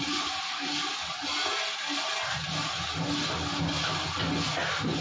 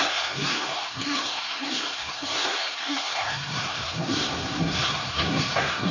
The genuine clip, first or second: first